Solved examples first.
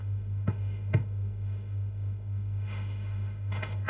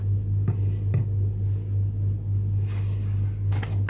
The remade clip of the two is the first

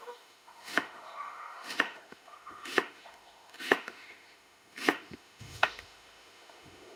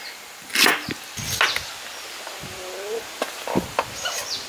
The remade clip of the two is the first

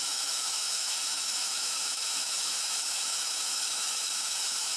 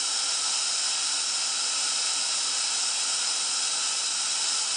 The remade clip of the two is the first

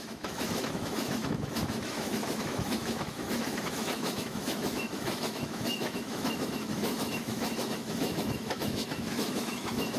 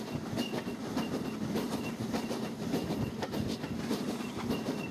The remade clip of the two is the first